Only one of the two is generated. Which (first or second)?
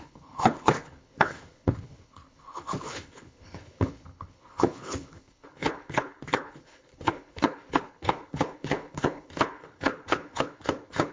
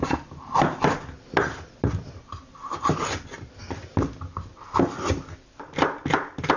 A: first